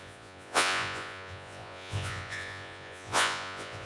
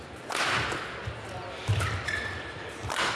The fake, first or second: first